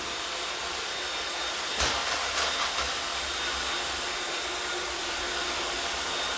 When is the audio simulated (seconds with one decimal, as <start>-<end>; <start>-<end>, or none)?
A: 2.0-2.6